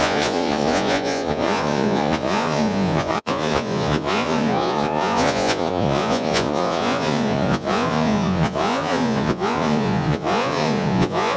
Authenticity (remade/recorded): remade